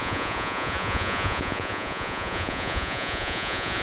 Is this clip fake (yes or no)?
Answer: yes